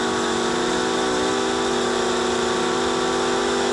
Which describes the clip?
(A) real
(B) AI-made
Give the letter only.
A